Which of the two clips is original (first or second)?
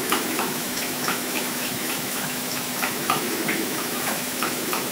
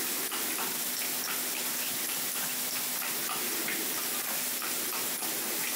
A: second